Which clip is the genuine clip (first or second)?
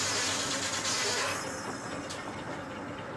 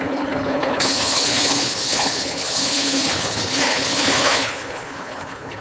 first